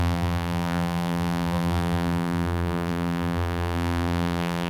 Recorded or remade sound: remade